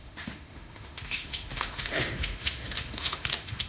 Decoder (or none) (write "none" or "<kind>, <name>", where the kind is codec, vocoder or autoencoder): autoencoder, DAC-VAE